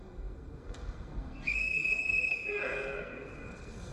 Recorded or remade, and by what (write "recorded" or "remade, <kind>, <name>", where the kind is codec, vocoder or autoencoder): remade, codec, SNAC